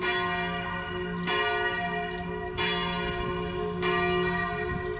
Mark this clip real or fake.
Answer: real